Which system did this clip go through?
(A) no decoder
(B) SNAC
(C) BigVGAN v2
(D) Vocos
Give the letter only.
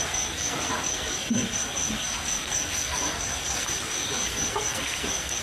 B